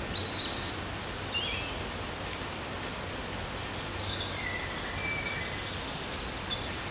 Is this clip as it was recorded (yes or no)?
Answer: yes